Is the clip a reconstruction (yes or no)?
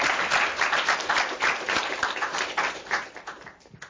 no